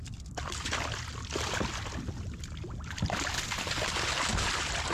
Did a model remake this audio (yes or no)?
no